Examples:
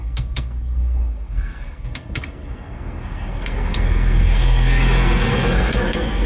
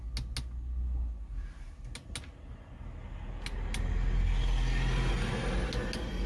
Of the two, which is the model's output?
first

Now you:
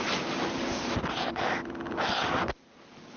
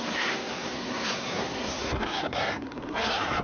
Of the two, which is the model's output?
second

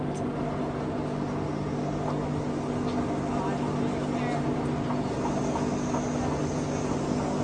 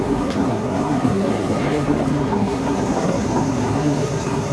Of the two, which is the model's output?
second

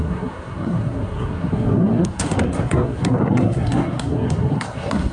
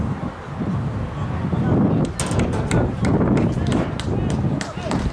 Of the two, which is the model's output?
first